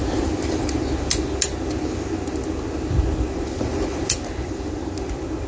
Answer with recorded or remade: recorded